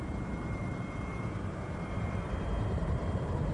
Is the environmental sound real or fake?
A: fake